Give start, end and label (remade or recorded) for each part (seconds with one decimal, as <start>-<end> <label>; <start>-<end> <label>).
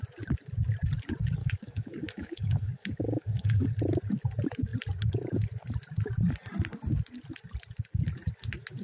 0.0-1.4 recorded; 1.4-3.8 remade; 3.8-8.8 recorded